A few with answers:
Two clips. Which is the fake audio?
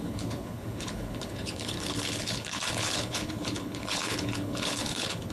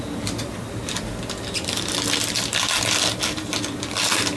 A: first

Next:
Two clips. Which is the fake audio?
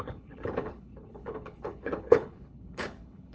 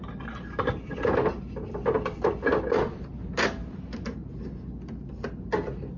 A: first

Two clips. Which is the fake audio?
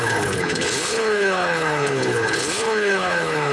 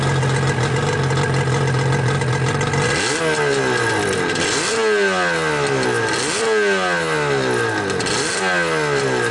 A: first